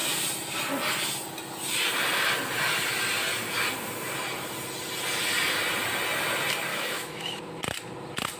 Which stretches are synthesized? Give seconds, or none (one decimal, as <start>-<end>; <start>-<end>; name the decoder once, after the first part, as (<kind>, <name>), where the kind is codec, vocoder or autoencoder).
6.7-7.4 (autoencoder, DAC-VAE)